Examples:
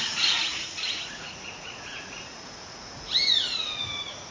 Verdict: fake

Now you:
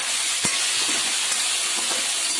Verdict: fake